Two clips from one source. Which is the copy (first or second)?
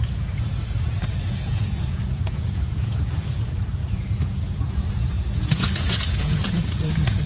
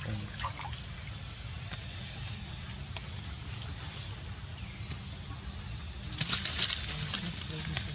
first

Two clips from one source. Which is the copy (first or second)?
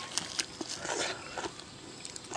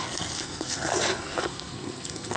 second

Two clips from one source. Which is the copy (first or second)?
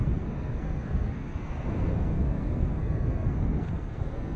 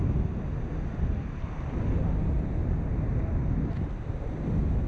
first